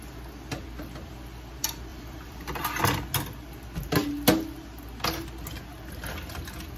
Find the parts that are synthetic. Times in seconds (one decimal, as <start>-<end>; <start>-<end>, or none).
1.9-2.8